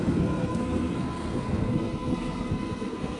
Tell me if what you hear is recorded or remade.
remade